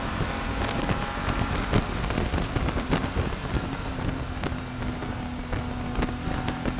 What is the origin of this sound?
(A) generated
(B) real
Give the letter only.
B